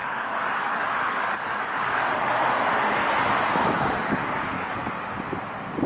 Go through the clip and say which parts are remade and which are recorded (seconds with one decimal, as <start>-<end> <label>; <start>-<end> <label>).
0.0-3.0 remade; 3.0-3.9 recorded; 3.9-4.8 remade; 4.8-5.9 recorded